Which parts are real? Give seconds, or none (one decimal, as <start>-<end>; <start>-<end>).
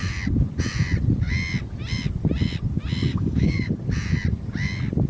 0.0-3.1; 3.7-5.1